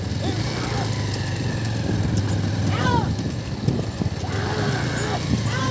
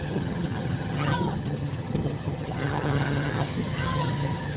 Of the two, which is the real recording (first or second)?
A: first